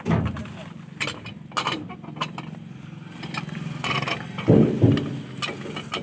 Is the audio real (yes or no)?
yes